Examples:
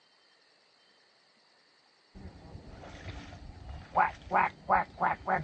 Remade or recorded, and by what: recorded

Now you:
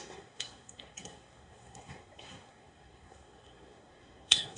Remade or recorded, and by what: remade, codec, SNAC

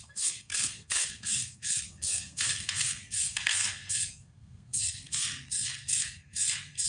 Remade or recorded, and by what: remade, codec, SNAC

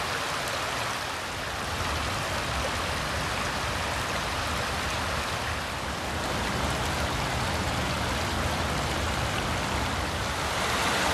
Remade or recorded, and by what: recorded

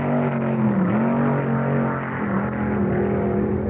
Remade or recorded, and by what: recorded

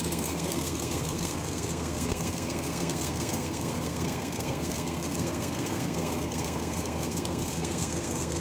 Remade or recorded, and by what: remade, codec, SNAC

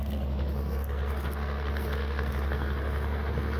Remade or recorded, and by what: remade, codec, SNAC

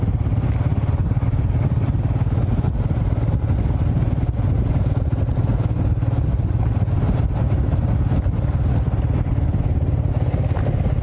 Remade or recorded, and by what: recorded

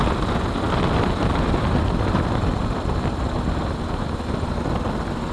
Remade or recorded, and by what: recorded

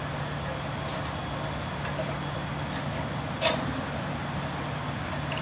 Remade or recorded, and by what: recorded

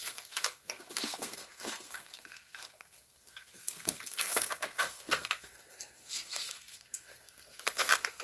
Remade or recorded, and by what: remade, codec, SNAC